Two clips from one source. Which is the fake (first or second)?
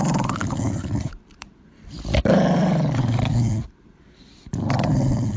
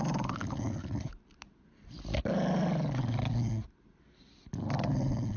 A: first